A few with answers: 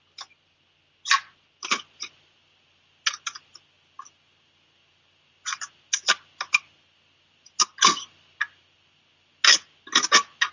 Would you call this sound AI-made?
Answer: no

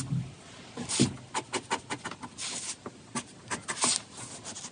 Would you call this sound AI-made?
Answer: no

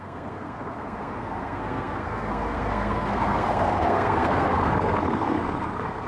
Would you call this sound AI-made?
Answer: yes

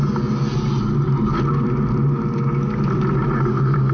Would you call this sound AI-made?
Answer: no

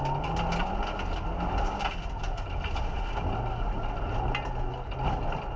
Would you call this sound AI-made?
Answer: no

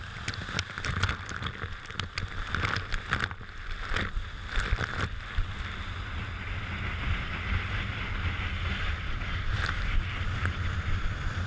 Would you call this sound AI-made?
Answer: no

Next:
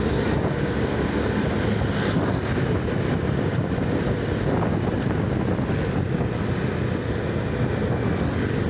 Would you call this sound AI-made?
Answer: no